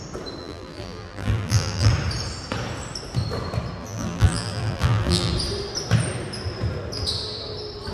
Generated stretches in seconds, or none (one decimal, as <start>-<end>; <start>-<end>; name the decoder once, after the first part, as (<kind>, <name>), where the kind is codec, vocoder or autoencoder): 0.4-1.9 (vocoder, BigVGAN v2); 3.8-5.3